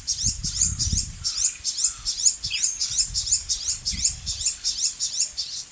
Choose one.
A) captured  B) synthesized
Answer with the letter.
B